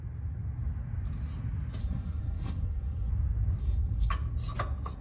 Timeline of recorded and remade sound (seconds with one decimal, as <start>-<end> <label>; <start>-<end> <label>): 0.0-1.8 recorded; 1.8-3.1 remade; 3.1-3.6 recorded; 3.6-4.1 remade; 4.1-5.0 recorded